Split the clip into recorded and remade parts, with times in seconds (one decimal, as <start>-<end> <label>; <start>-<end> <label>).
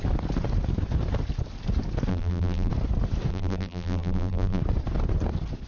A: 0.0-2.1 recorded; 2.1-2.7 remade; 2.7-3.3 recorded; 3.3-4.6 remade; 4.6-5.7 recorded